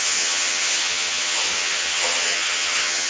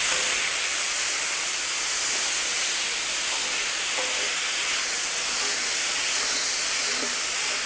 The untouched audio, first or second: second